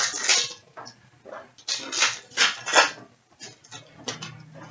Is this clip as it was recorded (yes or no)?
yes